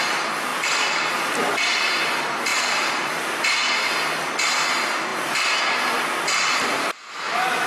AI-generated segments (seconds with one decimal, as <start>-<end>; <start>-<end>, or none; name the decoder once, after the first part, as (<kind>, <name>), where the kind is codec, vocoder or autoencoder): 0.5-2.1 (vocoder, BigVGAN v2); 2.5-3.4; 5.1-5.6